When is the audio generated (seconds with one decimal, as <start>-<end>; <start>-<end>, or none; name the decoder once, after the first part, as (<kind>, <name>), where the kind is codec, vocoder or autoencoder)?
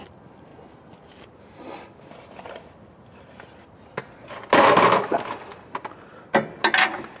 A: 0.5-4.8 (vocoder, BigVGAN v2)